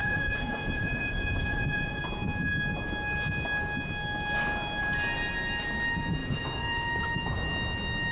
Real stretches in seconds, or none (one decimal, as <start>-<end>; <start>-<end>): 2.0-6.2; 7.0-8.1